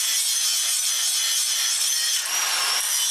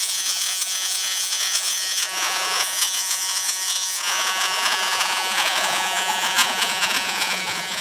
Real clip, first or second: first